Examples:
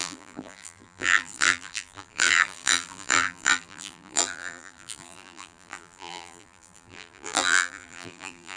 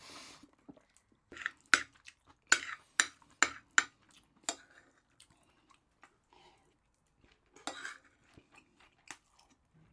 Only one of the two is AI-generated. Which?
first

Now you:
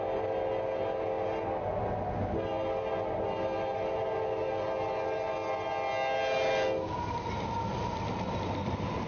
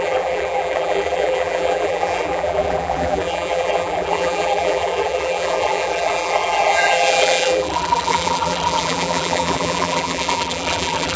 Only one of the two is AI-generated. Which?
second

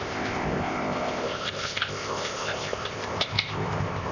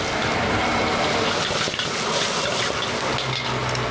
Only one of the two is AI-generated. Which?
first